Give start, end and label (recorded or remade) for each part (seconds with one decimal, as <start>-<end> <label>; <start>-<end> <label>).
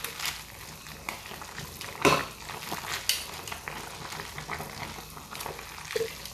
0.0-6.3 recorded